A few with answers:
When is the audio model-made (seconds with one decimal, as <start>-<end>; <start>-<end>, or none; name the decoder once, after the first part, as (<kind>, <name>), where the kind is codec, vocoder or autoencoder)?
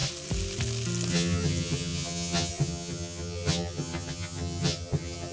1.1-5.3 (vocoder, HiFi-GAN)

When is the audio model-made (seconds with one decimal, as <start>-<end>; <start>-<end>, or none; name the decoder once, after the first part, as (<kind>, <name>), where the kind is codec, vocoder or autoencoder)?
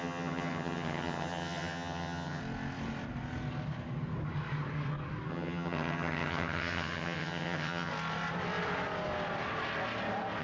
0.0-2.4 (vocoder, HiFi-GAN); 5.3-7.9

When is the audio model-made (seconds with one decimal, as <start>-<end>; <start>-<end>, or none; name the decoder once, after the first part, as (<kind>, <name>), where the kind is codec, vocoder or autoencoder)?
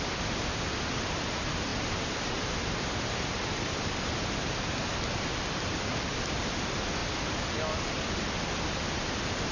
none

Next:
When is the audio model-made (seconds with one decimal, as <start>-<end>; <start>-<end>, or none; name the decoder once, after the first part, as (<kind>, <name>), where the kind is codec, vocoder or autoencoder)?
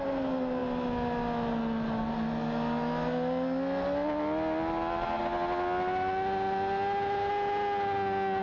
none